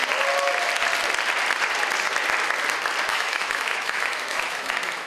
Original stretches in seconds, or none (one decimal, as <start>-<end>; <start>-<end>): 0.0-3.1